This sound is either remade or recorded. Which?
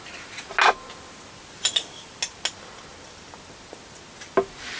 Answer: recorded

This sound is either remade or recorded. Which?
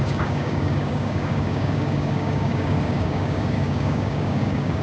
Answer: remade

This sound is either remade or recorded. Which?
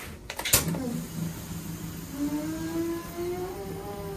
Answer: recorded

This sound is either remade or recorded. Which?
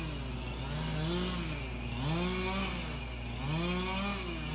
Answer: recorded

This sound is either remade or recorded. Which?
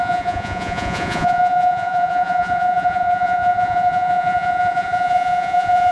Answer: remade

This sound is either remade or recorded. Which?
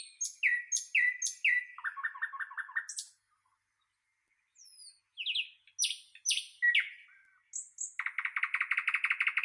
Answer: recorded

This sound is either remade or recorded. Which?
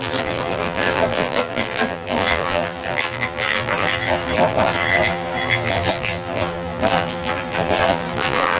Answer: remade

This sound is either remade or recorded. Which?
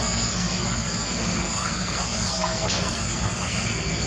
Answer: remade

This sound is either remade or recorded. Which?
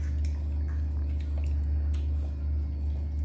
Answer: recorded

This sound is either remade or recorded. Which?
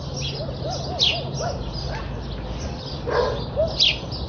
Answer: recorded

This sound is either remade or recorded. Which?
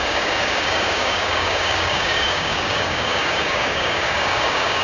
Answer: remade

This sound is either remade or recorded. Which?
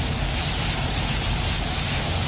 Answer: recorded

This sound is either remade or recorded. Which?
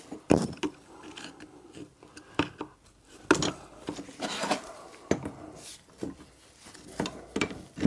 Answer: recorded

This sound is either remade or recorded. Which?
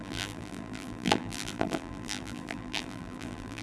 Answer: remade